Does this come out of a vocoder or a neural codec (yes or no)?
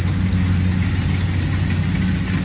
no